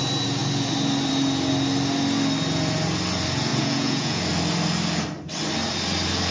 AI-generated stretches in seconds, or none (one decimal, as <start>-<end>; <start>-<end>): 3.5-4.2